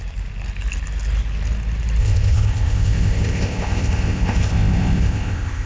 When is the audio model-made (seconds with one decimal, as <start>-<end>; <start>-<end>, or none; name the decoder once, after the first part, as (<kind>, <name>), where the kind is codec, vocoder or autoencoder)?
2.0-5.7 (codec, ZipCodec)